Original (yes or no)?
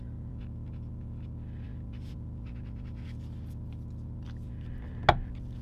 yes